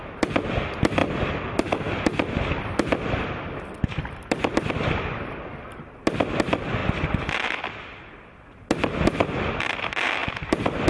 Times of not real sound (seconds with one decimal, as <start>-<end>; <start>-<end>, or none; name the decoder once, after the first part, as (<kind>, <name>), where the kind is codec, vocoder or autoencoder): none